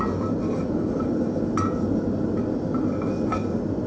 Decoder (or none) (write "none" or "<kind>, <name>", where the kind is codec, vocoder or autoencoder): none